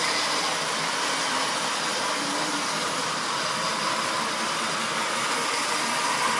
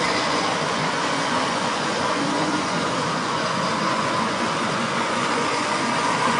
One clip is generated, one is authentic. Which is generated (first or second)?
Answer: second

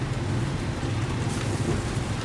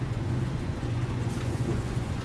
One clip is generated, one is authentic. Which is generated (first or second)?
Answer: second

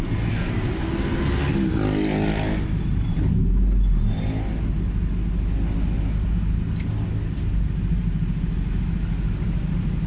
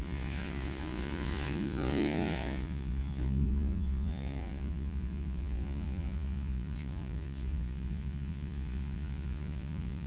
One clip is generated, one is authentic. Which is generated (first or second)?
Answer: second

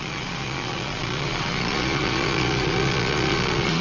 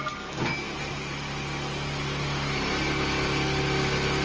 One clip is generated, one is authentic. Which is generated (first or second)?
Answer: first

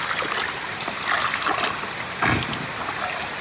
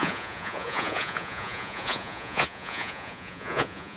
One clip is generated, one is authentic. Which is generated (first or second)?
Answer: second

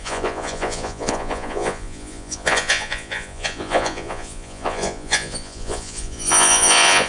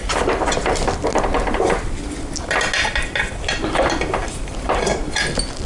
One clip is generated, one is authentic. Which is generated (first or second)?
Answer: first